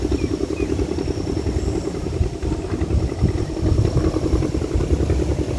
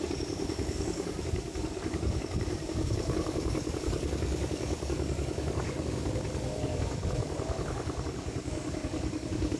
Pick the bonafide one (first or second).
first